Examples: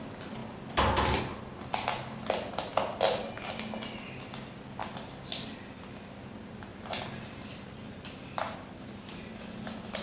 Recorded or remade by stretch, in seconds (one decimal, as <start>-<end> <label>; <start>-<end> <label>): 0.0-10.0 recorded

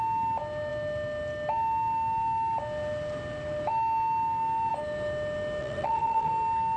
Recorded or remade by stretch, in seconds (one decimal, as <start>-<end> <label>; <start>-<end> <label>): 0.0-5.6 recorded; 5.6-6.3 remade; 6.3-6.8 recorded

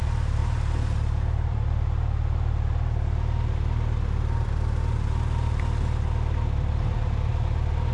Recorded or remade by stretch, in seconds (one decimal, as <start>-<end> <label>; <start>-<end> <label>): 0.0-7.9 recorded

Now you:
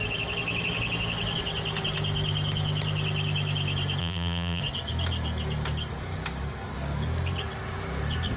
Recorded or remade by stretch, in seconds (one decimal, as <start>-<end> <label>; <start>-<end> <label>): 0.0-4.0 recorded; 4.0-4.6 remade; 4.6-8.4 recorded